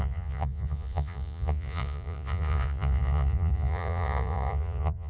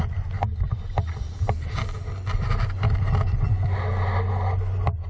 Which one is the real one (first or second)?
second